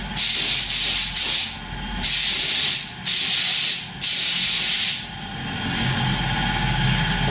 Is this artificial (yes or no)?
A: no